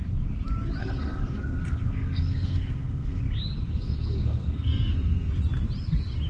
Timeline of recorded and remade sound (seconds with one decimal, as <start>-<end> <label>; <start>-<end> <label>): 0.0-0.8 recorded; 0.8-3.2 remade; 3.2-3.7 recorded; 3.7-5.3 remade; 5.3-6.3 recorded